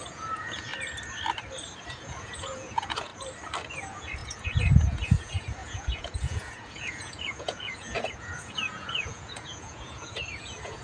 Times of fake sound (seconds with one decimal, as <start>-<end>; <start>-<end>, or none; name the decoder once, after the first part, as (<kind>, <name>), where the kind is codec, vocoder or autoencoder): 0.0-0.7 (vocoder, Vocos); 1.9-3.1; 3.7-10.8